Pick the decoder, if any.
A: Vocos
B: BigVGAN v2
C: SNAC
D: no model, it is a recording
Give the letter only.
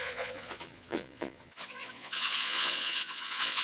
A